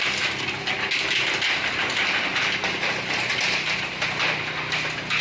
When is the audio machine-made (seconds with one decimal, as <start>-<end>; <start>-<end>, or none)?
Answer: none